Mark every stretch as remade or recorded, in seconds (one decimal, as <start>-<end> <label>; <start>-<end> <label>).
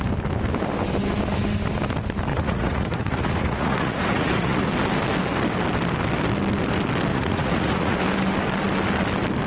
0.0-2.3 recorded; 2.3-4.7 remade; 4.7-7.1 recorded; 7.1-8.0 remade; 8.0-9.5 recorded